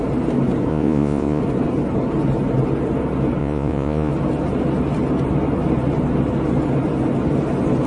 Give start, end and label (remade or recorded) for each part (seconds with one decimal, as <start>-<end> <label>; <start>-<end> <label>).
0.0-0.7 recorded; 0.7-1.4 remade; 1.4-3.4 recorded; 3.4-4.1 remade; 4.1-7.9 recorded